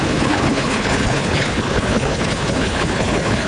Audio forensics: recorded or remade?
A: remade